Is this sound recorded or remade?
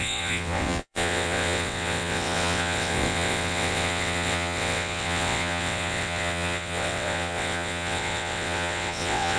remade